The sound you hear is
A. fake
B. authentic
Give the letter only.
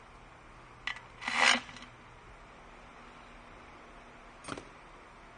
B